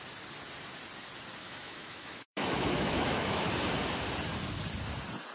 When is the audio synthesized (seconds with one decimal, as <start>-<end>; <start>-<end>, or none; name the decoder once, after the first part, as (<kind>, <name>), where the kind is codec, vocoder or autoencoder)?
1.4-3.5 (autoencoder, DAC-VAE)